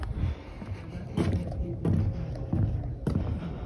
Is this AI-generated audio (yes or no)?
no